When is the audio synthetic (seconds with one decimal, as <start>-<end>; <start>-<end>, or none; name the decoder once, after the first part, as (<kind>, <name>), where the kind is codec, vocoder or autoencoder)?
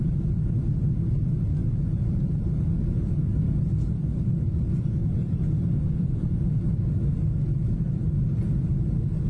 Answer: 3.3-4.3 (vocoder, BigVGAN v2); 5.0-6.5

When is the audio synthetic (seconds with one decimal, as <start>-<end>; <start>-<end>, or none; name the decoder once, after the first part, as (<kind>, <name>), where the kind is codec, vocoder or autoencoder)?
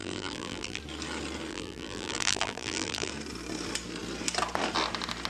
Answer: 0.0-0.8 (vocoder, BigVGAN v2); 1.5-3.1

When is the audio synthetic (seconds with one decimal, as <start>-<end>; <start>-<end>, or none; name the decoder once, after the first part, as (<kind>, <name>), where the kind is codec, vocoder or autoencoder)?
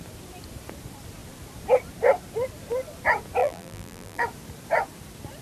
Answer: 3.4-4.2 (vocoder, BigVGAN v2)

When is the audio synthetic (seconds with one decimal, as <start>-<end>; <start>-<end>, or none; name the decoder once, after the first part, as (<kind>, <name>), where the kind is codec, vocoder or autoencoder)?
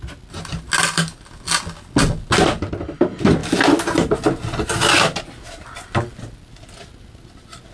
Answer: none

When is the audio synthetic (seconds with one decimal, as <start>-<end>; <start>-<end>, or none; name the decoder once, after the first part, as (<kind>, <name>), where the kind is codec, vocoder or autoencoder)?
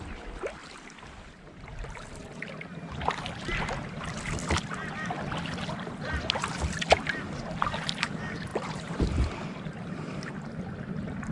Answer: 8.5-10.3 (vocoder, BigVGAN v2)